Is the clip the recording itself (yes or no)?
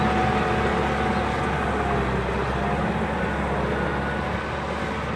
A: yes